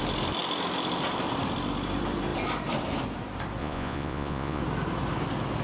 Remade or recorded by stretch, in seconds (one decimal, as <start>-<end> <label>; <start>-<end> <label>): 0.0-3.6 recorded; 3.6-4.6 remade; 4.6-5.6 recorded